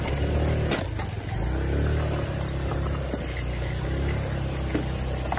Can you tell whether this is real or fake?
real